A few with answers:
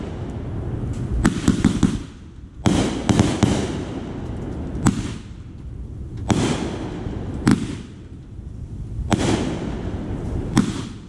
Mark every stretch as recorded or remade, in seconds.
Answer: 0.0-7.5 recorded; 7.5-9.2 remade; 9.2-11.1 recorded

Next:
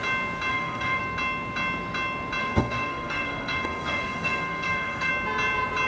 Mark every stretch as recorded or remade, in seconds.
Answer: 0.0-0.5 recorded; 0.5-1.0 remade; 1.0-2.4 recorded; 2.4-5.1 remade; 5.1-5.9 recorded

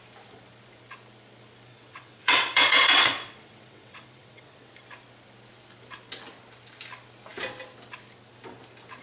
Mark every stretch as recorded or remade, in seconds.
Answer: 0.0-1.7 recorded; 1.7-4.7 remade; 4.7-9.0 recorded